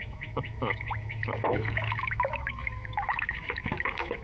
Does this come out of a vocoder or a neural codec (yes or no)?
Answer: yes